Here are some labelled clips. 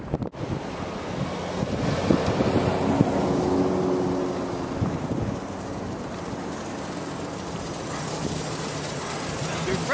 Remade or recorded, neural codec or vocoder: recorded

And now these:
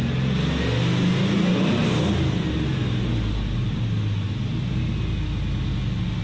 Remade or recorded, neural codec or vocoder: recorded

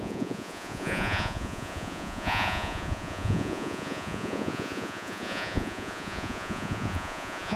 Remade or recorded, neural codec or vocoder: remade, vocoder, Vocos